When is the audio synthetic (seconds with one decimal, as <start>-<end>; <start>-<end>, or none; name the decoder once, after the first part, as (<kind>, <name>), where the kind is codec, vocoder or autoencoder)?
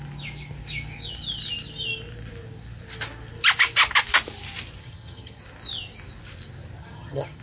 4.8-5.4 (vocoder, HiFi-GAN); 6.8-7.4